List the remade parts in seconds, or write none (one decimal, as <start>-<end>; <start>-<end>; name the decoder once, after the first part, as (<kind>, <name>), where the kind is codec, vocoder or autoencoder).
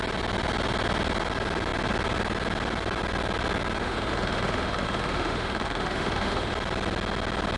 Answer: 3.8-6.5 (autoencoder, DAC-VAE)